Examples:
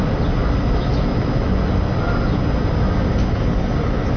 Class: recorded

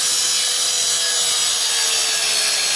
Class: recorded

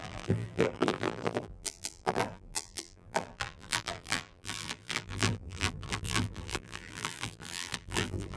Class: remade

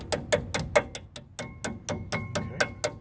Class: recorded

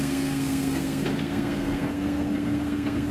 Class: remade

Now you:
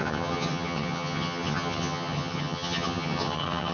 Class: remade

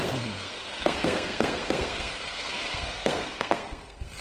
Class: remade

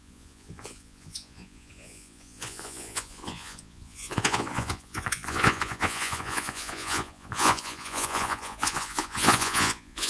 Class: remade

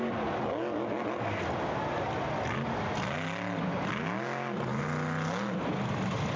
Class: recorded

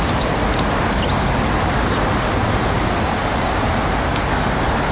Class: recorded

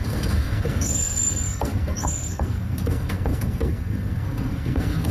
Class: remade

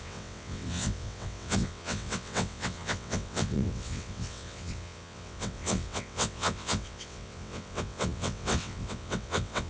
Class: remade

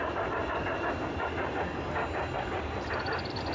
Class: recorded